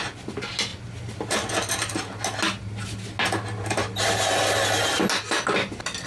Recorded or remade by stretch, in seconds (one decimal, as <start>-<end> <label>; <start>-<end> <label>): 0.0-0.7 recorded; 0.7-1.5 remade; 1.5-6.1 recorded